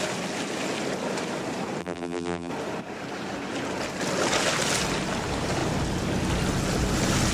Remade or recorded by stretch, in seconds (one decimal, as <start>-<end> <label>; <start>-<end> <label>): 0.0-1.8 recorded; 1.8-2.5 remade; 2.5-7.3 recorded